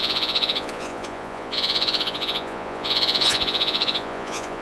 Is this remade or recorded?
remade